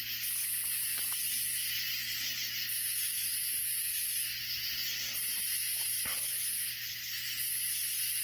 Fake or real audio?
real